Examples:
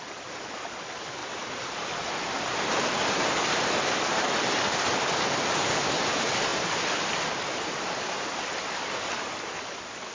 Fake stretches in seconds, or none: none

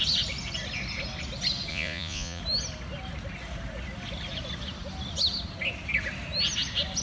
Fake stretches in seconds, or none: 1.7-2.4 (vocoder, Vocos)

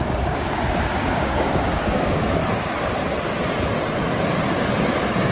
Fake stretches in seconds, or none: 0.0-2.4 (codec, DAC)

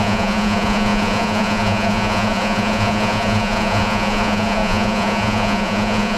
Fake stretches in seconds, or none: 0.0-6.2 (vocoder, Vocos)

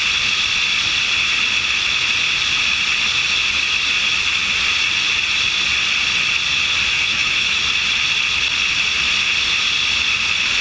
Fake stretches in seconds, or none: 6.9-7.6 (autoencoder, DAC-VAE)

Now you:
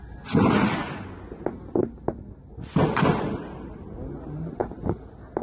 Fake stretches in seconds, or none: none

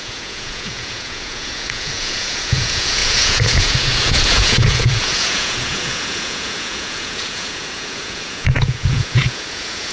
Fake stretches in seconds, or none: 0.0-9.9 (vocoder, Vocos)